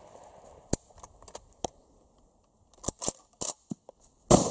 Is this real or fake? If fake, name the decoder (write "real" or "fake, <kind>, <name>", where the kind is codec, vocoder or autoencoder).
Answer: real